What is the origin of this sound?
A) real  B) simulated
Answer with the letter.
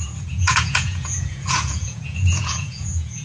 B